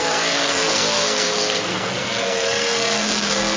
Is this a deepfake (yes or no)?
yes